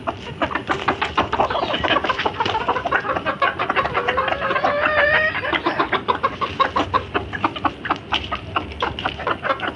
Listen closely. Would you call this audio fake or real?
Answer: real